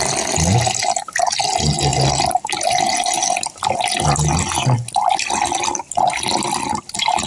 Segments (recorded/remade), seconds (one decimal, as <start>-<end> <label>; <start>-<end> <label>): 0.0-7.3 recorded